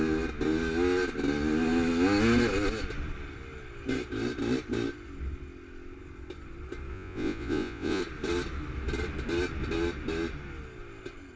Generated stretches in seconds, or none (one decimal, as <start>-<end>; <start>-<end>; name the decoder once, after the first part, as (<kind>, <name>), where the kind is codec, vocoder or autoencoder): 6.9-8.0 (vocoder, Vocos)